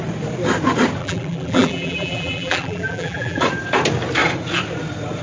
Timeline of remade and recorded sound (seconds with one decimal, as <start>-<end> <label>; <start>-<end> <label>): 0.0-1.0 recorded; 1.0-3.4 remade; 3.4-5.2 recorded